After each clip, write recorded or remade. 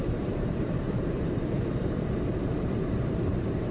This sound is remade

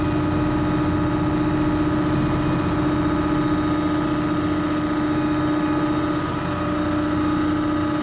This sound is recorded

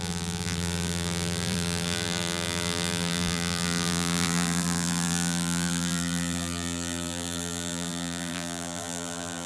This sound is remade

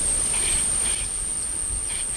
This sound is recorded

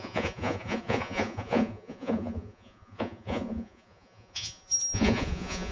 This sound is remade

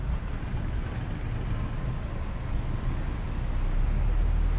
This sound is recorded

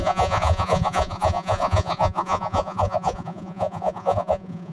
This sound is remade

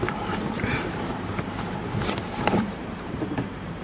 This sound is remade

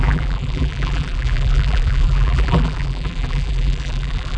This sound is remade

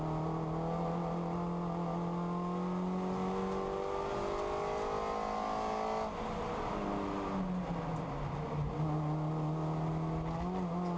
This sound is recorded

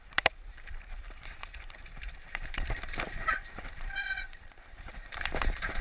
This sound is remade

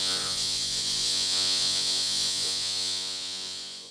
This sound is remade